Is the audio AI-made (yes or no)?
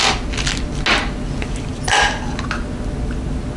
no